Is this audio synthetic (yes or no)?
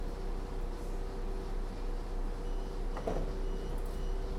no